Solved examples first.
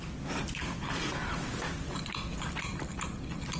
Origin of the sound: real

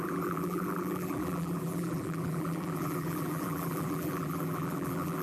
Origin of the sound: fake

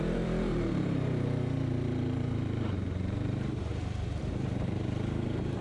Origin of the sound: fake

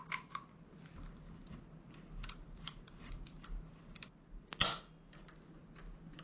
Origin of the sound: real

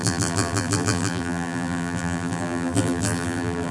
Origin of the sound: fake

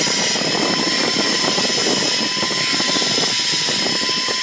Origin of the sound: real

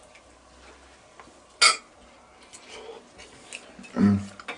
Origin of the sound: real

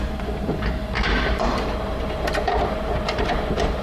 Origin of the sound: fake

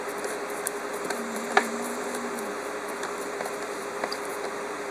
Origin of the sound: fake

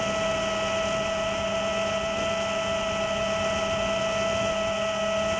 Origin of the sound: real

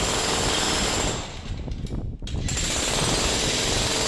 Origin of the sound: real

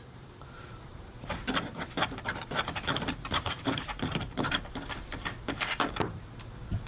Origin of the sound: fake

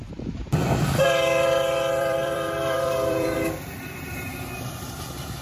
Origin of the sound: fake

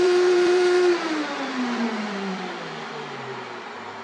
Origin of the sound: fake